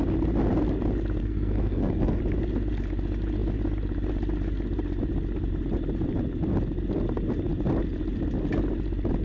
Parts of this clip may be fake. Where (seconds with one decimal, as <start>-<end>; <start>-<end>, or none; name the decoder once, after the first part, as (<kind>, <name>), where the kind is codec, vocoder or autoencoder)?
1.2-2.2 (codec, SNAC)